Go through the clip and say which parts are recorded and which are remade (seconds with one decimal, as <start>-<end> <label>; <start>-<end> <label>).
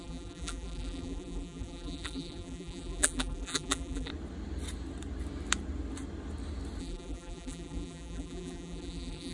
0.0-4.1 remade; 4.1-6.8 recorded; 6.8-9.3 remade